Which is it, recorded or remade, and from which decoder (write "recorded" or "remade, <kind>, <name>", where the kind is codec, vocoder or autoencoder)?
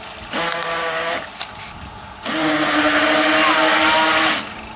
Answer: recorded